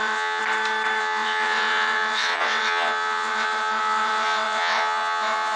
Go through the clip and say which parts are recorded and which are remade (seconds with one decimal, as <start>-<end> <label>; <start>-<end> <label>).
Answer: 0.0-0.4 remade; 0.4-1.0 recorded; 1.0-5.6 remade